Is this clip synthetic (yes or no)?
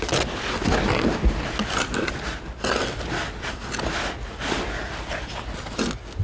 no